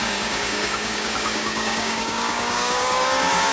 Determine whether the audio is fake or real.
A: fake